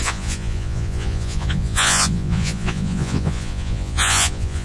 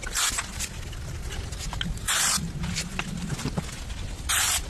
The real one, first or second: second